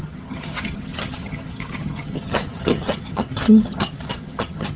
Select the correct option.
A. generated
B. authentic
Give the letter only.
A